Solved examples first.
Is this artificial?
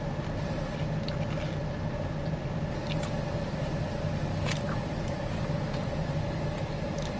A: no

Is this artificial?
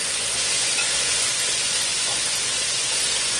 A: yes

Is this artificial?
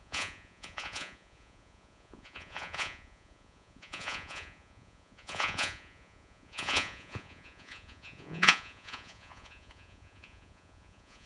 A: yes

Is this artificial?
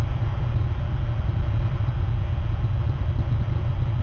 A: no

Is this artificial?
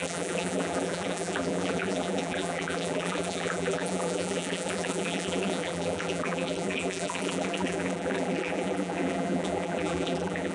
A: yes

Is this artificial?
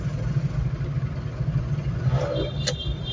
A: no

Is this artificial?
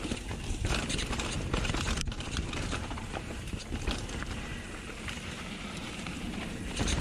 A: yes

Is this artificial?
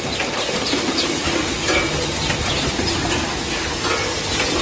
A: no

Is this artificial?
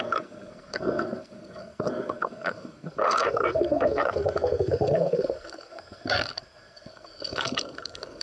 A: yes